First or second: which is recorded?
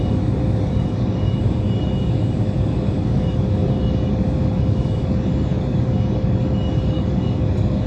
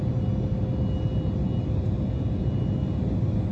second